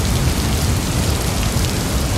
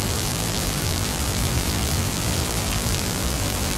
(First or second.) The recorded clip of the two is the first